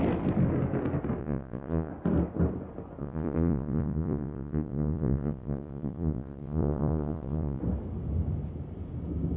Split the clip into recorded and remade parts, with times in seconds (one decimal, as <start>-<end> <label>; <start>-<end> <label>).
0.0-1.2 recorded; 1.2-1.9 remade; 1.9-3.0 recorded; 3.0-7.6 remade; 7.6-9.4 recorded